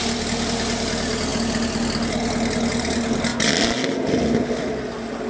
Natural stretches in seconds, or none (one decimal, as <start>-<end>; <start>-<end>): 0.0-5.3